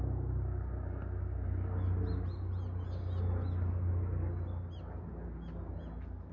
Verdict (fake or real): real